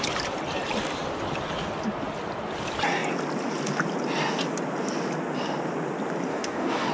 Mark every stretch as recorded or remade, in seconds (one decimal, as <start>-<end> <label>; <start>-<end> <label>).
0.0-6.3 recorded; 6.3-6.9 remade